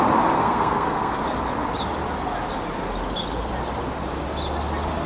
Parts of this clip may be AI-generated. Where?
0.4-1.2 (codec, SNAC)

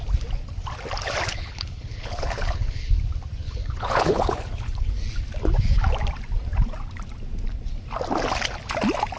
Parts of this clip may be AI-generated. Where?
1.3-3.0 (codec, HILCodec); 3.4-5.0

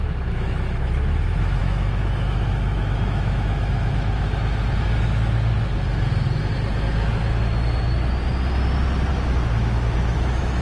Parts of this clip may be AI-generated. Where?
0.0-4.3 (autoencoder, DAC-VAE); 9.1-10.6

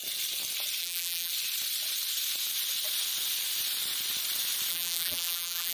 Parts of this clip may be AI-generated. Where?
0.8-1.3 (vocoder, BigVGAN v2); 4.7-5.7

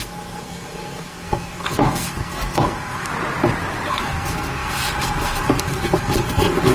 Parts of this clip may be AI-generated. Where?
0.0-3.1 (codec, SNAC); 3.9-6.7

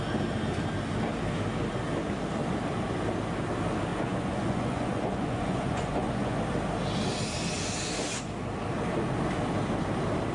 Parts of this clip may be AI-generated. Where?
3.9-6.4 (vocoder, Vocos)

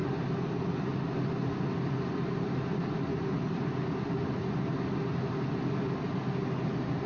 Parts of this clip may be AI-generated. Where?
none